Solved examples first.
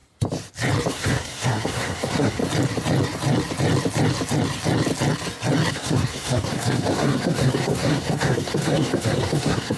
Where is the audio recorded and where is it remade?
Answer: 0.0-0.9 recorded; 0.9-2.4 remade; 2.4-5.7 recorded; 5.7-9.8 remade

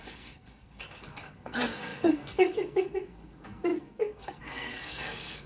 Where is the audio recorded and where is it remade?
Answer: 0.0-5.5 remade